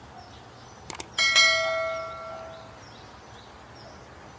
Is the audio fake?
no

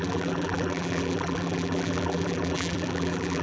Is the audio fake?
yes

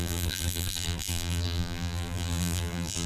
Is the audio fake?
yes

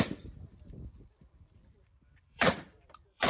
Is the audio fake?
yes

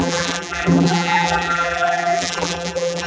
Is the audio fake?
yes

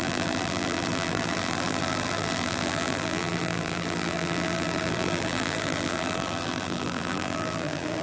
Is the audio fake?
yes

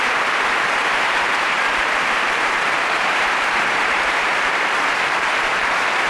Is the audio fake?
yes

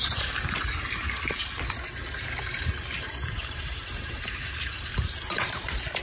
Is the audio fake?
yes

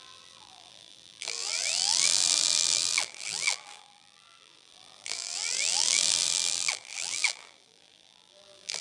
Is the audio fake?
yes